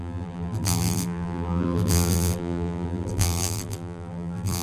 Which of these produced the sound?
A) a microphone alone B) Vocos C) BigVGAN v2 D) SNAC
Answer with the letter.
C